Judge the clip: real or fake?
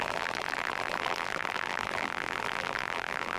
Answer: fake